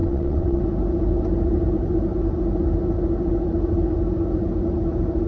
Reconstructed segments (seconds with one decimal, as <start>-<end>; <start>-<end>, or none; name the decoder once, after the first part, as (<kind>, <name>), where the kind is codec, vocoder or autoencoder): 0.0-0.6 (vocoder, WaveNeXt)